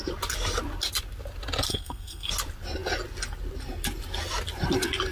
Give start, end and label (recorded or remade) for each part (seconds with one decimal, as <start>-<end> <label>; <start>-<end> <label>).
0.0-1.7 recorded; 1.7-2.3 remade; 2.3-5.1 recorded